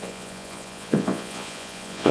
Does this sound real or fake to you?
fake